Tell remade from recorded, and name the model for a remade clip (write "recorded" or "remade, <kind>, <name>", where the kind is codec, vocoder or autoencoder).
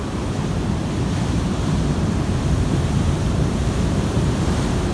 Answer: remade, vocoder, BigVGAN v2